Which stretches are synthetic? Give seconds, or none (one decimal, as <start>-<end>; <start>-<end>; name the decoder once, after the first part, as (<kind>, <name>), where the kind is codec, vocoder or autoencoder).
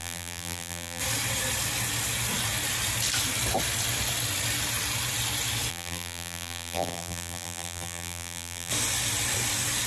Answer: 0.0-1.0 (vocoder, BigVGAN v2); 5.7-8.7